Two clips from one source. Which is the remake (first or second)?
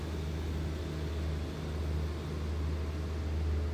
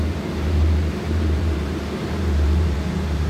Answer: second